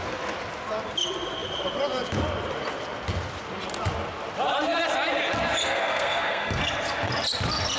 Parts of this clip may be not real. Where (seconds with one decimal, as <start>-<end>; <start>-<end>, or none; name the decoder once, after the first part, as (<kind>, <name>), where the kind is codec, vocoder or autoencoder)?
5.6-6.6 (codec, SNAC)